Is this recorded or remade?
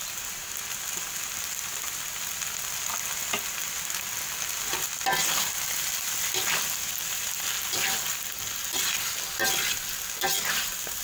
recorded